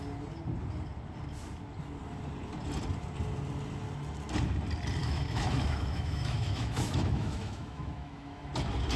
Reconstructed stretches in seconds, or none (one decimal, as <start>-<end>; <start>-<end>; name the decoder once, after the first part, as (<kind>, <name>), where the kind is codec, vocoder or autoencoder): 5.0-8.5 (autoencoder, DAC-VAE)